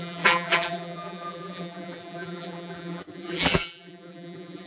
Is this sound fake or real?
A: fake